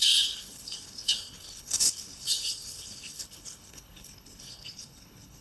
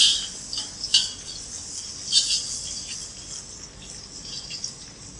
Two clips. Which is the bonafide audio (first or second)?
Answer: second